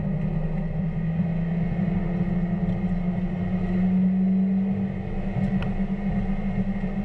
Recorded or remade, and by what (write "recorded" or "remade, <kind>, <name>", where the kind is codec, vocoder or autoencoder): recorded